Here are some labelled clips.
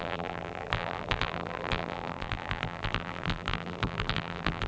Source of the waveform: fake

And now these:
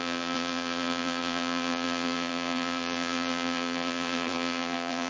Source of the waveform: fake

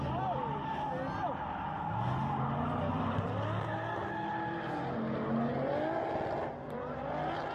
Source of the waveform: real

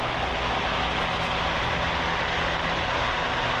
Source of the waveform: real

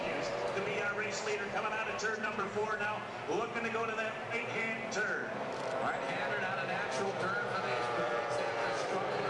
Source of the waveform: fake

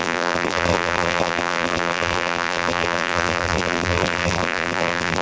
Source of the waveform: fake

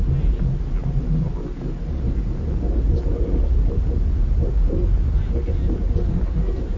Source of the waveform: real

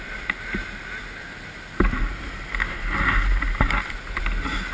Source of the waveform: real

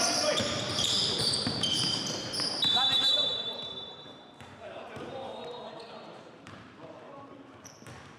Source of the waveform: fake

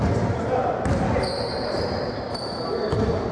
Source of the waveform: fake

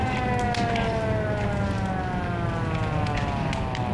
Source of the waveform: real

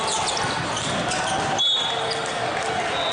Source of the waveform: real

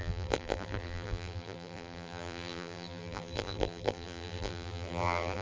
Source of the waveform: fake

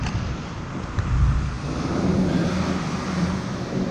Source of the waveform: fake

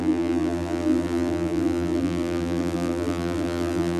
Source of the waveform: fake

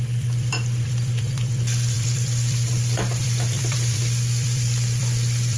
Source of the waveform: fake